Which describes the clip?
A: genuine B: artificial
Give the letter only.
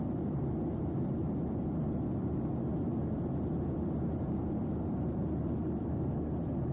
B